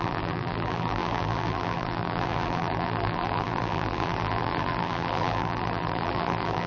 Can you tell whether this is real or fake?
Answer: fake